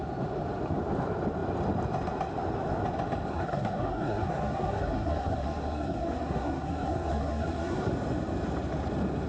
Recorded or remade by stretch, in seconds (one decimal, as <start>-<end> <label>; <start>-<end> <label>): 0.0-3.3 recorded; 3.3-7.9 remade; 7.9-9.3 recorded